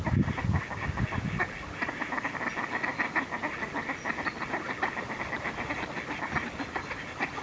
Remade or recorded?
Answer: recorded